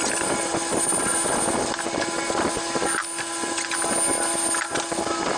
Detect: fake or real real